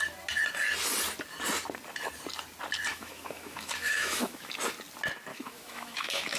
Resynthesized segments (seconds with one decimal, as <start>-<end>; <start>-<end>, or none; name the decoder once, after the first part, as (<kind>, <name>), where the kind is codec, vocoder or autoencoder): 2.9-4.5 (autoencoder, DAC-VAE); 5.3-6.4